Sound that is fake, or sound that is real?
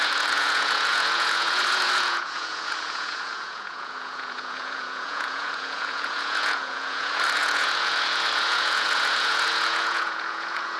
fake